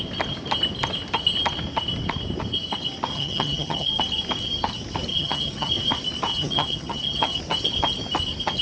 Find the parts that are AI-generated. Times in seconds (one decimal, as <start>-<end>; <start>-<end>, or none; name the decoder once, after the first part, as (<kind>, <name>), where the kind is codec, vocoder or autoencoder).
3.1-3.9 (vocoder, HiFi-GAN); 5.1-5.7; 6.3-7.4